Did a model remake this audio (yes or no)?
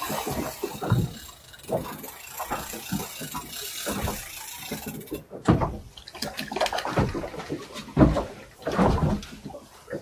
no